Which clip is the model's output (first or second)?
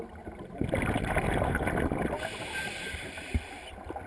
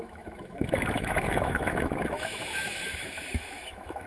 second